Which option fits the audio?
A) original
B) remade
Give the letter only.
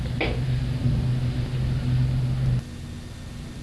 A